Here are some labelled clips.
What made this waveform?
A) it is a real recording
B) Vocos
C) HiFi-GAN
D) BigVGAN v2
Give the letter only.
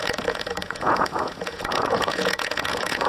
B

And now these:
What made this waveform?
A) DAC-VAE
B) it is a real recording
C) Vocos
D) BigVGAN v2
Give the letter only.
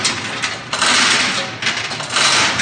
B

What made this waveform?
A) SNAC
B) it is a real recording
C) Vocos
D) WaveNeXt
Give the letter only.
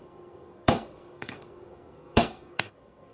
A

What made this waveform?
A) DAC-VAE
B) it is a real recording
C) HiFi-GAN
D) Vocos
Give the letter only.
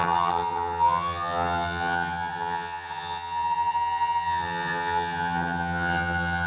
C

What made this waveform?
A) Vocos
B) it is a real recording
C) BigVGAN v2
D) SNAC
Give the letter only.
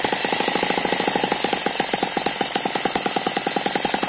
B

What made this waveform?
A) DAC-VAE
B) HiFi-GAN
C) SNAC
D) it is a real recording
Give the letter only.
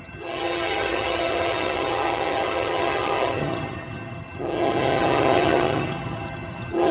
B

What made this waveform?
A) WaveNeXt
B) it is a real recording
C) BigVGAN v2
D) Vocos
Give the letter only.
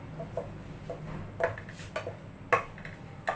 B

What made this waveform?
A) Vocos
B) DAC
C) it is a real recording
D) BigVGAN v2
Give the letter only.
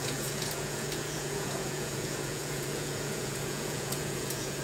A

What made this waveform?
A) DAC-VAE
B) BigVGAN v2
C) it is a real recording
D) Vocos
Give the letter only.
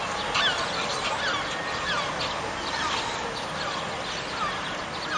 C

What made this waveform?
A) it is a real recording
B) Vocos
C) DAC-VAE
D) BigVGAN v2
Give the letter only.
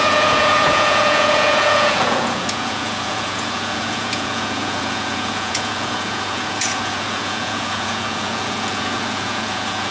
B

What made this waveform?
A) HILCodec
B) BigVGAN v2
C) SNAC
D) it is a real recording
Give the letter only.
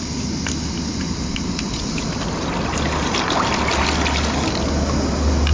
D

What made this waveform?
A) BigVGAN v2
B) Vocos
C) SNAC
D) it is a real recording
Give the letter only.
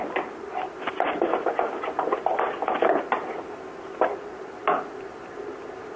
D